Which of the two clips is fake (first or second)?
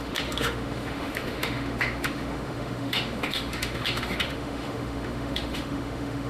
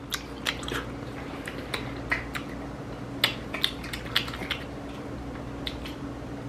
first